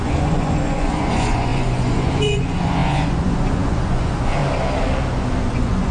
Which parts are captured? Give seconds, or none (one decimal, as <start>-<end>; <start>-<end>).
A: 4.4-5.5